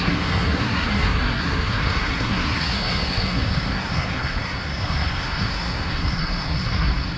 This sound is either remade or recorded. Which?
remade